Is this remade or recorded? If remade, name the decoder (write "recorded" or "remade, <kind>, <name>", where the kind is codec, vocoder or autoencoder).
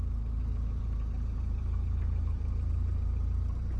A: remade, vocoder, BigVGAN v2